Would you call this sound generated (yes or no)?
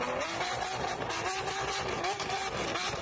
no